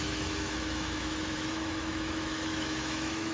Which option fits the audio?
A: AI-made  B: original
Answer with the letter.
A